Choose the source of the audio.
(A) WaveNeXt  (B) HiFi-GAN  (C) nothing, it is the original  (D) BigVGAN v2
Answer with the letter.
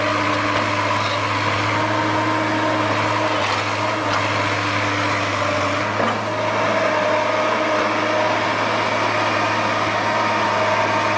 C